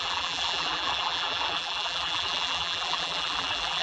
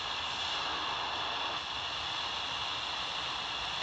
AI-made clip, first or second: first